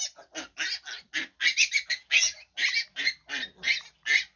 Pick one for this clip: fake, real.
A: real